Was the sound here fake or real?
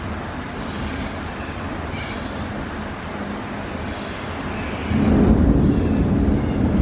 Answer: real